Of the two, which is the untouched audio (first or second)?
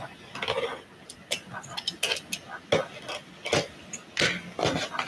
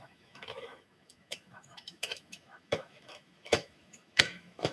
first